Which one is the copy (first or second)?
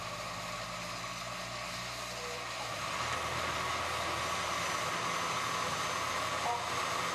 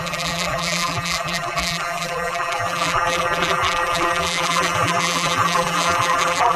second